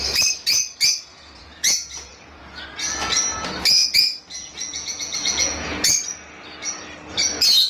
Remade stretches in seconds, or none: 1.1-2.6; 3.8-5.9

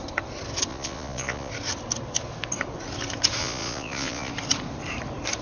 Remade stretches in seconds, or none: 0.7-1.5; 3.4-4.3

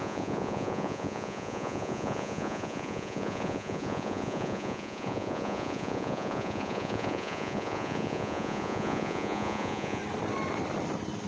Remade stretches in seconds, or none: 0.0-10.0

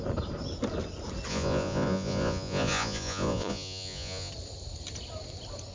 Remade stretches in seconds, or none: 1.3-4.3